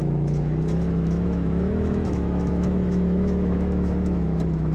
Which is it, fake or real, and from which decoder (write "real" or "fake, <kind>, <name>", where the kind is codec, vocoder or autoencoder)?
fake, autoencoder, DAC-VAE